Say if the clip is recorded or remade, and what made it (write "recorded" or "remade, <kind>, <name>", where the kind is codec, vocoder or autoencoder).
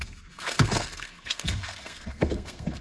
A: remade, codec, SNAC